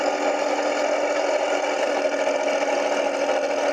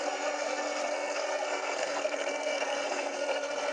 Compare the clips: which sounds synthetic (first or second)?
second